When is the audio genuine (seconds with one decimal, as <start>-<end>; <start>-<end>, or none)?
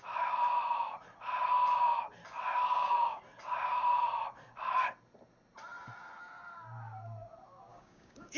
0.0-2.7; 3.2-7.7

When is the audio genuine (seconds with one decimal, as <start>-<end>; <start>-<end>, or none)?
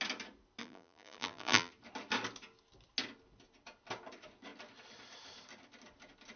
0.0-0.6; 1.7-6.4